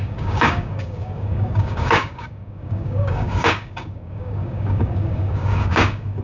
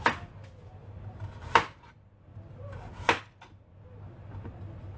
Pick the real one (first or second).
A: second